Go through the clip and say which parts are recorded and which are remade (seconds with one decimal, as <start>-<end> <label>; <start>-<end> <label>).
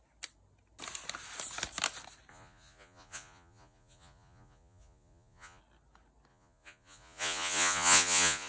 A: 0.0-2.3 recorded; 2.3-5.6 remade; 5.6-6.3 recorded; 6.3-8.5 remade